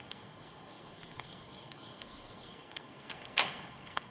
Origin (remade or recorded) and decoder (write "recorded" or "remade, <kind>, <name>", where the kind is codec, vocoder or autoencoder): remade, codec, SNAC